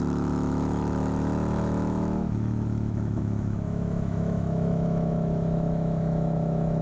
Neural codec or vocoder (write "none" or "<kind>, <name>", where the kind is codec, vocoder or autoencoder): autoencoder, DAC-VAE